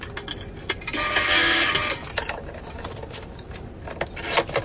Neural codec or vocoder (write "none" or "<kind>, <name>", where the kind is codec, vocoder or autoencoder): none